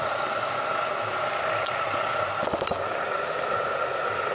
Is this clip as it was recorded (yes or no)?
yes